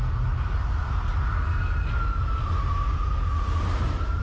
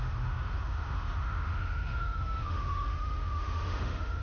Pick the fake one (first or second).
second